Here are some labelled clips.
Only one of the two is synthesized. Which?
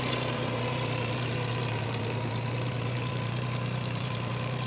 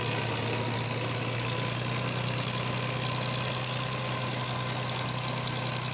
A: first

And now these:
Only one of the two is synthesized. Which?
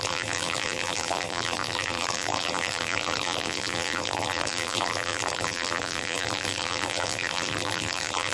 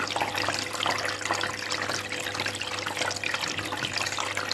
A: first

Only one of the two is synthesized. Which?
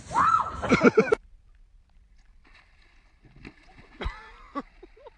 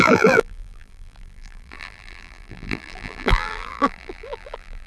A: second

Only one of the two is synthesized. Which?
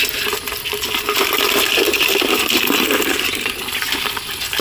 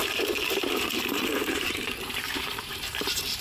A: second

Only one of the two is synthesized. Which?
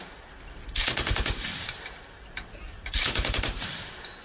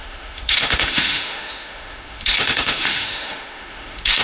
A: second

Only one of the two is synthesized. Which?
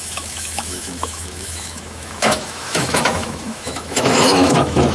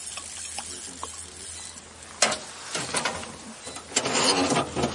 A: first